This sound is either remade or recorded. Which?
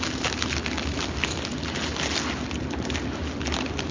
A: recorded